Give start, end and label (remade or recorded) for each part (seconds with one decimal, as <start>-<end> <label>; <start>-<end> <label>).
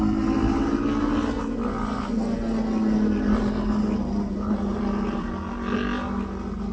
0.0-4.7 recorded; 4.7-5.3 remade; 5.3-6.7 recorded